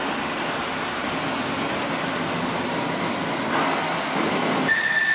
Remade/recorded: recorded